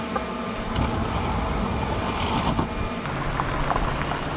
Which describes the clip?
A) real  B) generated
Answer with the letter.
A